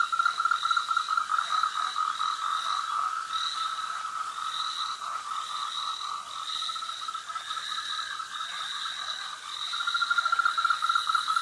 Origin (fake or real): real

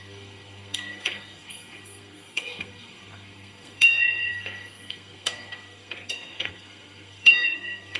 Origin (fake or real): fake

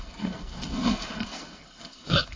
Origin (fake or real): fake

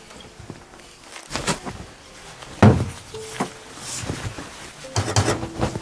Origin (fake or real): real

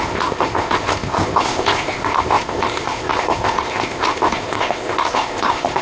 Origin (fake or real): fake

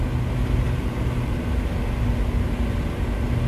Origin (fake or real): real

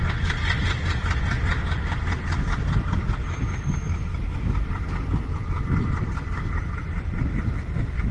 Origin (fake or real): real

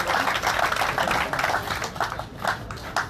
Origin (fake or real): real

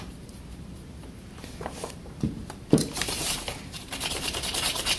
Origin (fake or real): fake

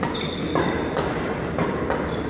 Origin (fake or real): real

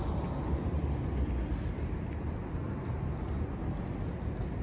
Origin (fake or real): real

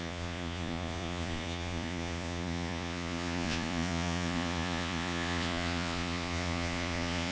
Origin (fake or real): fake